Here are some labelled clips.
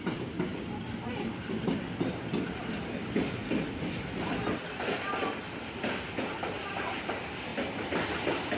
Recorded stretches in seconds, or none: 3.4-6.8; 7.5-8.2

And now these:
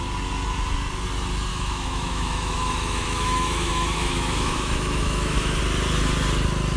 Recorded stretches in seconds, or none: 0.0-1.5; 5.6-6.8

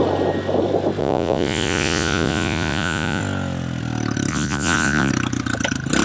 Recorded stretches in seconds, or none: 0.0-1.0; 3.2-4.3; 5.1-6.0

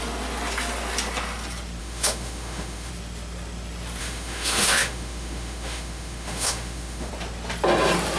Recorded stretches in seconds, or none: 0.0-1.8; 2.9-4.0; 7.1-8.2

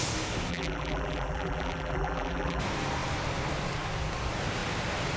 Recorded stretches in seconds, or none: 0.0-0.5; 2.6-5.2

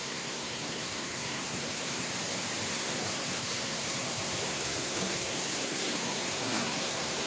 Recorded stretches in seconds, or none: 2.1-2.7

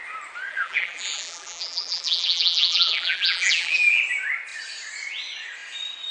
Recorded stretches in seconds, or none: 0.0-0.5; 4.0-6.1